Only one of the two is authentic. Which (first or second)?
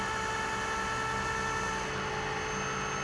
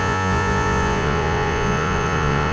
first